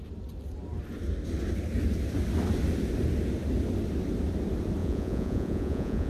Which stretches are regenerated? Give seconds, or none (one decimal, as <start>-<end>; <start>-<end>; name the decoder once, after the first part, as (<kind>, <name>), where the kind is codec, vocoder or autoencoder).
4.8-6.1 (vocoder, Vocos)